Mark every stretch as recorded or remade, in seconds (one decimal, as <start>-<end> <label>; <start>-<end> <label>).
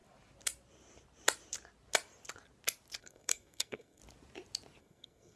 0.0-3.0 recorded; 3.0-4.0 remade; 4.0-4.8 recorded; 4.8-5.4 remade